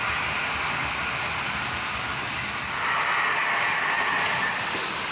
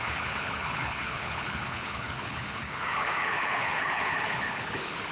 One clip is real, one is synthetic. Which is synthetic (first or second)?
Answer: second